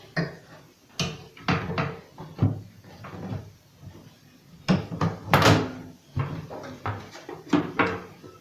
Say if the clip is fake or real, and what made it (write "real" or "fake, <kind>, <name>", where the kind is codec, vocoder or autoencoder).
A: real